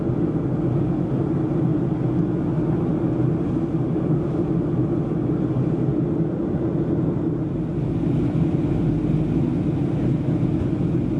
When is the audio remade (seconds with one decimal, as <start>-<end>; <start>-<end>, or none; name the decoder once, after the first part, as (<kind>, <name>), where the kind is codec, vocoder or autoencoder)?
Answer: none